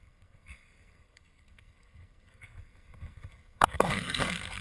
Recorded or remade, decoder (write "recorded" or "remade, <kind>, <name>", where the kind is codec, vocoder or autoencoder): remade, codec, SNAC